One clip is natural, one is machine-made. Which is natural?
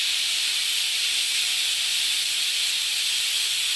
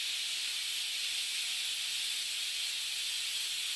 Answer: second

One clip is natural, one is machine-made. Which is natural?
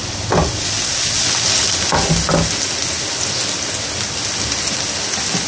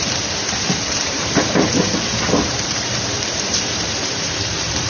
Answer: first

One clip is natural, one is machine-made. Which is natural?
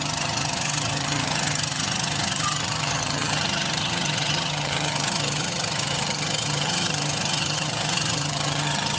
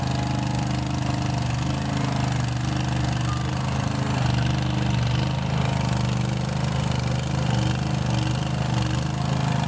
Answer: second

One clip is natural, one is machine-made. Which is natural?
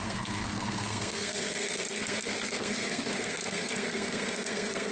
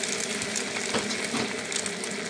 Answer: second